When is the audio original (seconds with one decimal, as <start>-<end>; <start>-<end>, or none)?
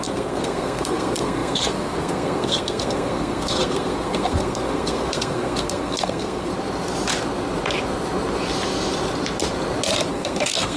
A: 6.5-10.1